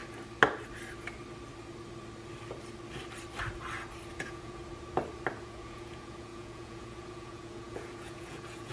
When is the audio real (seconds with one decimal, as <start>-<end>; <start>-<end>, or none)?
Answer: 0.0-4.1; 4.6-5.4